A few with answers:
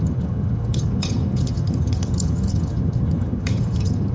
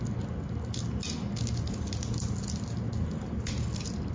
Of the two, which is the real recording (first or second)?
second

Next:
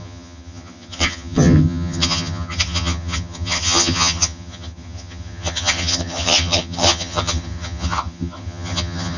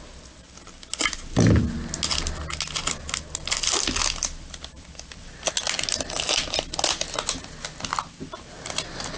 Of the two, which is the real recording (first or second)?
second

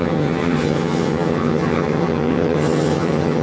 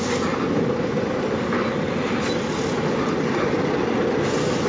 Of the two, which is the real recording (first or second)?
second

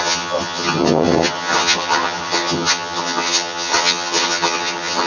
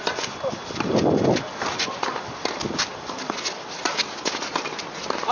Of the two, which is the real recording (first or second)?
second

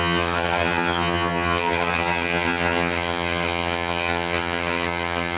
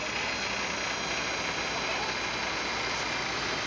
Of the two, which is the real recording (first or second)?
second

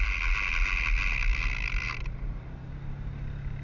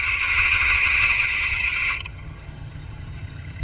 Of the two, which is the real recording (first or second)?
first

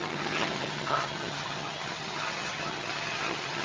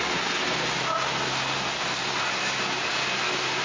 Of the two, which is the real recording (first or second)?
second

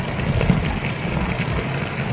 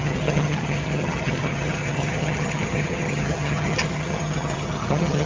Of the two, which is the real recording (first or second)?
first